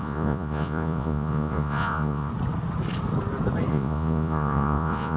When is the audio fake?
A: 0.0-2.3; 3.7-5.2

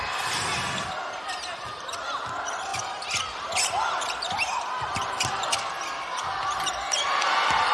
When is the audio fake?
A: none

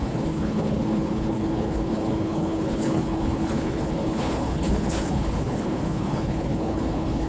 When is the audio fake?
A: 0.0-7.3

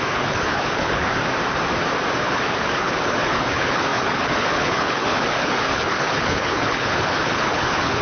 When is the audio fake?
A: 0.0-1.2; 2.2-8.0

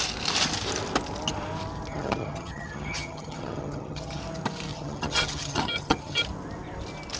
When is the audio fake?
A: 1.9-4.2; 4.7-6.2

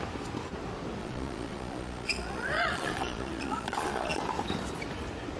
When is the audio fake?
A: 1.0-4.2